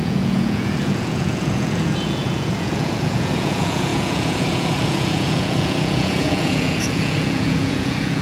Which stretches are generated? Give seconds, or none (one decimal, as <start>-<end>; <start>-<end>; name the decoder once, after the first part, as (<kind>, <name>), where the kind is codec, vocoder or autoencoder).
0.0-8.2 (vocoder, Vocos)